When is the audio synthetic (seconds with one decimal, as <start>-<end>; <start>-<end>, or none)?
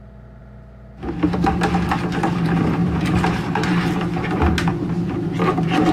2.8-3.5; 4.7-5.3